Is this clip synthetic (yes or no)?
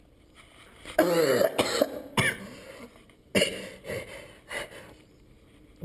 no